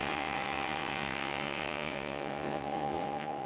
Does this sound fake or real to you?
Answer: fake